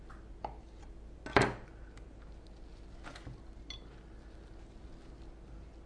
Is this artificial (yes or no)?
no